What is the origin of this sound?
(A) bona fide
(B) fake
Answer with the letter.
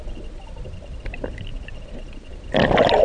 A